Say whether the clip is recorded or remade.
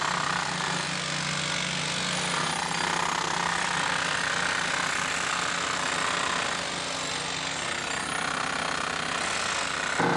recorded